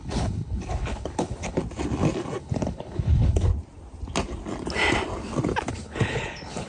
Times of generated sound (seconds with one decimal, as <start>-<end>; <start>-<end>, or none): 0.0-1.6; 2.4-3.5; 5.7-6.7